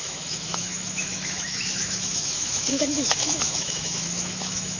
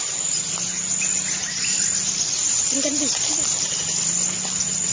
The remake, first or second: first